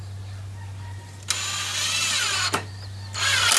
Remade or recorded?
recorded